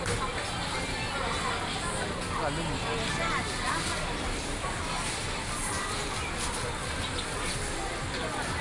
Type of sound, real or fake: real